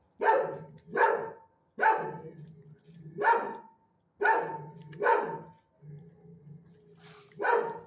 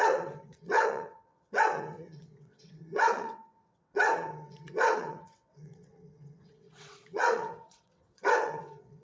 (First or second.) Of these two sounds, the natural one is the first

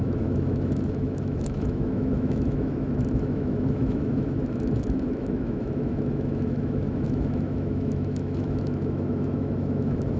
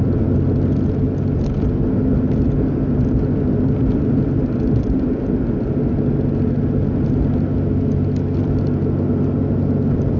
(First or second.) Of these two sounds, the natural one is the second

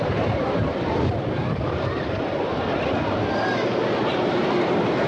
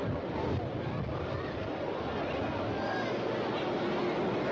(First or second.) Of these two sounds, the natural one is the second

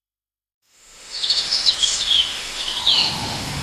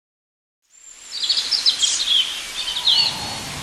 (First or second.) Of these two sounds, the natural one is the second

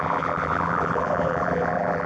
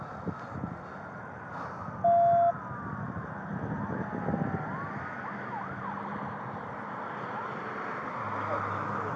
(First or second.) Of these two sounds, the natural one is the second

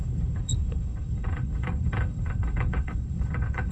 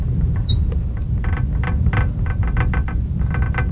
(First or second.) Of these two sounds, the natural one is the second